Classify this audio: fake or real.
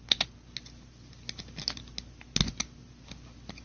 real